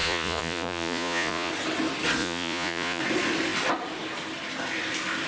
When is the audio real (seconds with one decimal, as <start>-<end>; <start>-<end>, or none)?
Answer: 1.5-2.2; 3.0-5.3